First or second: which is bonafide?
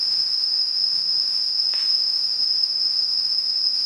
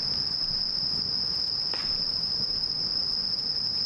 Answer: second